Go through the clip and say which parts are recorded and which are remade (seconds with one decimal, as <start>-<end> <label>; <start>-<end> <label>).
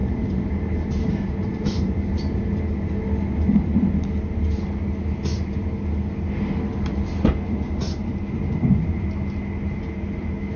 0.0-2.7 remade; 2.7-10.6 recorded